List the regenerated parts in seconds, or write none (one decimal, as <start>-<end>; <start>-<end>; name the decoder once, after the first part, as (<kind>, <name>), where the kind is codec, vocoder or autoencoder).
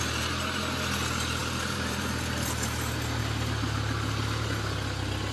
1.4-3.2 (vocoder, BigVGAN v2)